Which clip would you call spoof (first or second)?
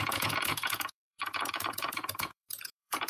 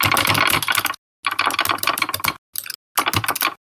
first